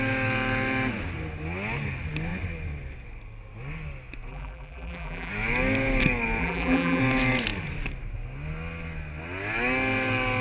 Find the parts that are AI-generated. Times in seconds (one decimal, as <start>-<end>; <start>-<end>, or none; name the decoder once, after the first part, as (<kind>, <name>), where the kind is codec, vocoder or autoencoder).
4.3-5.3 (vocoder, BigVGAN v2); 6.4-7.0